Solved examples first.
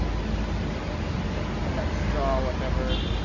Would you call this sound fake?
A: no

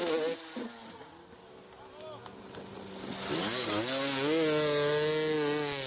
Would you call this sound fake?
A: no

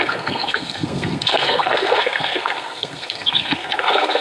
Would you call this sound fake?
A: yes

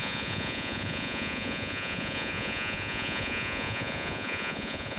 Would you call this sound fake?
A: yes